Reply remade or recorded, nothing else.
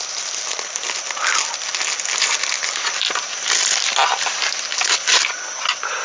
recorded